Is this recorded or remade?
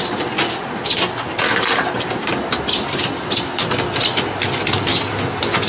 recorded